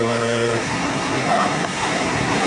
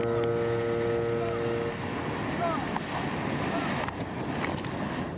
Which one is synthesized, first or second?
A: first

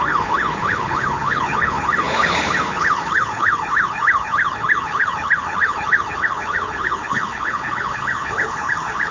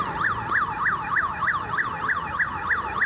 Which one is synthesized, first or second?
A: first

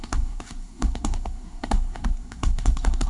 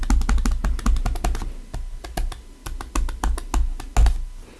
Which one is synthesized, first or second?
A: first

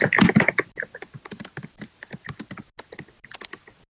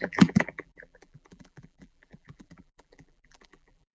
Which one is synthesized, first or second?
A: second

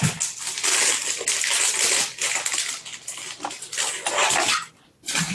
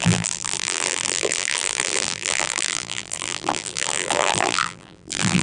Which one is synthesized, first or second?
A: second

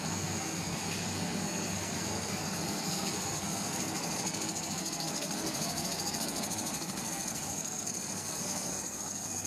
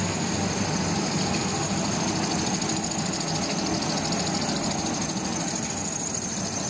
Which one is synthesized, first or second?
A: first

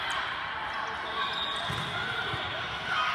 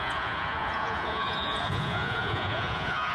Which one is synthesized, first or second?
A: second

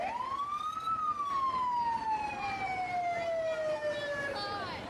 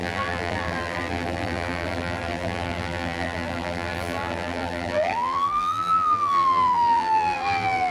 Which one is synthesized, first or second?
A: second